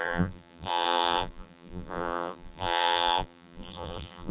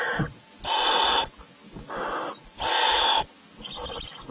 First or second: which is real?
second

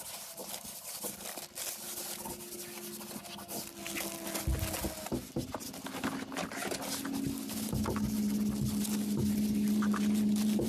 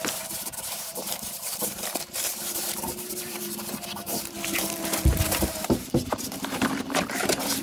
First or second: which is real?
first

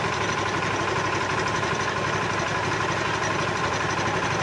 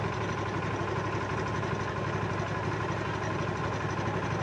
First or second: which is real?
second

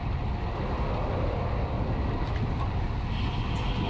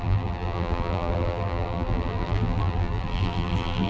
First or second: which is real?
first